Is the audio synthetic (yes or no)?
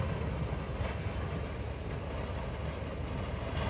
no